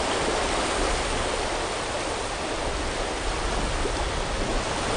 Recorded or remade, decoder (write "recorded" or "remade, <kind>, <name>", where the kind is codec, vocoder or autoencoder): recorded